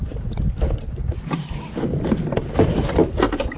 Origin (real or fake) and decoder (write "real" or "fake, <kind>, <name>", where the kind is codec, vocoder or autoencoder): real